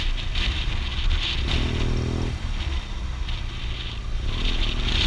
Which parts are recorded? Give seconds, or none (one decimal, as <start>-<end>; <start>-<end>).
0.0-5.1